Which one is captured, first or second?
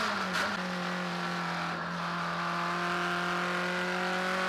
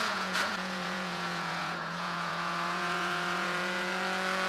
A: first